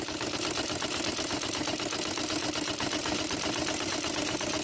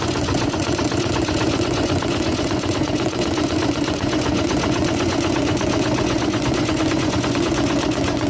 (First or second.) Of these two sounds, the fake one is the second